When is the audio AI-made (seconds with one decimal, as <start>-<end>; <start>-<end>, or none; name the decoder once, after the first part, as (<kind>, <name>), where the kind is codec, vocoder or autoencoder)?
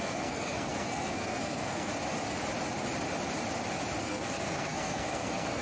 0.0-1.9 (codec, SNAC); 4.0-5.6